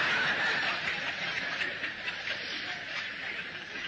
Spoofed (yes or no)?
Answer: no